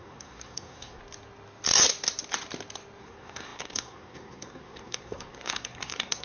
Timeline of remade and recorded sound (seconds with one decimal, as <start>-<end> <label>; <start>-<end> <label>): 0.0-1.0 remade; 1.0-3.0 recorded; 3.0-6.2 remade